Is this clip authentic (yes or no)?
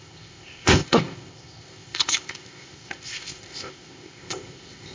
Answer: no